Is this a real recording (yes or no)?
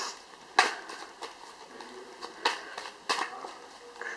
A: yes